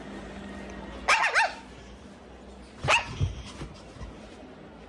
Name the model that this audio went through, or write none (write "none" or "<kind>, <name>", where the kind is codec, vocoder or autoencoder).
none